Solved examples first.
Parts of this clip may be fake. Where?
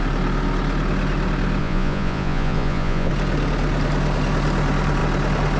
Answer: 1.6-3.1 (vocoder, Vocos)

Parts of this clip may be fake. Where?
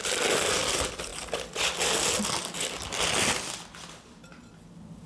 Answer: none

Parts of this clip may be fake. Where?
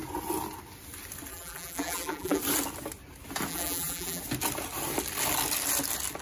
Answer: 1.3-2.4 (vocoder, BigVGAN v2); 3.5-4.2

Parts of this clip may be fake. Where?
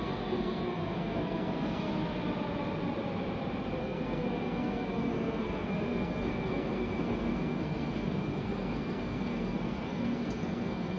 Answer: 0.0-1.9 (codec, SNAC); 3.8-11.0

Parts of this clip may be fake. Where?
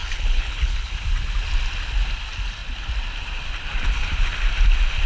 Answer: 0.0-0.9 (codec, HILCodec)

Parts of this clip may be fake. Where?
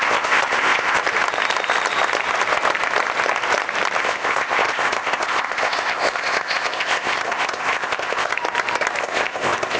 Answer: 0.0-1.0 (codec, ZipCodec); 4.0-8.3; 9.0-9.8